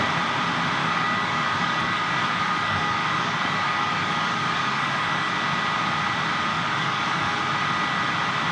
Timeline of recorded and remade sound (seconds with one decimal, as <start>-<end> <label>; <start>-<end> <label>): 0.0-0.8 recorded; 0.8-5.3 remade; 5.3-6.5 recorded; 6.5-7.5 remade; 7.5-8.5 recorded